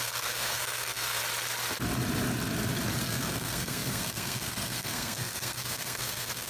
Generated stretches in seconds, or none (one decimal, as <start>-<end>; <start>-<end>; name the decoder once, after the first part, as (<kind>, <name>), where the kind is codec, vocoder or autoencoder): 0.0-1.2 (codec, SNAC); 3.0-6.5